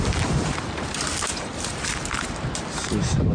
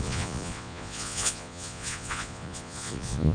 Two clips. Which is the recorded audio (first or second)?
first